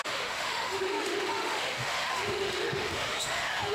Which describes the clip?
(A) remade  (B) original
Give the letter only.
A